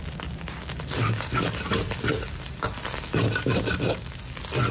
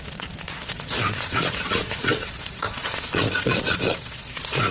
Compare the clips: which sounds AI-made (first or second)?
second